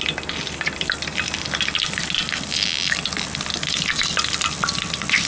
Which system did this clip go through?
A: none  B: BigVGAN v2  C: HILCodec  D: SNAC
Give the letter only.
A